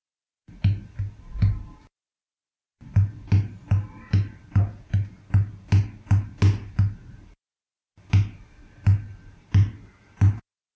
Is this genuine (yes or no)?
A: yes